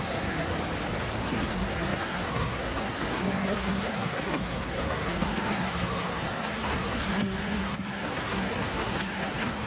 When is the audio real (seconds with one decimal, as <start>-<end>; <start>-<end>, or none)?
0.5-1.1

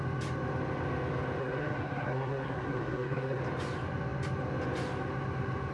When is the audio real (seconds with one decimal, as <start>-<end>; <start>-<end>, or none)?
0.0-1.4; 3.4-5.7

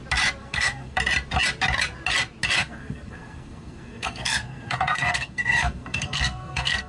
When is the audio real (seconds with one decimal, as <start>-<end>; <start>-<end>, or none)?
0.0-0.4; 1.0-2.6

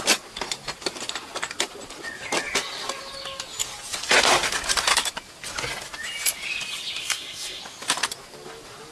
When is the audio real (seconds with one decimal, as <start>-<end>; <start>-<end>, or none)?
0.0-7.0; 7.6-8.9

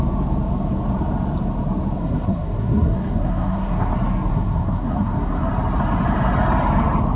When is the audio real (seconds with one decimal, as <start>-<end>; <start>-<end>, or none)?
0.0-2.0; 3.9-4.3; 5.5-7.2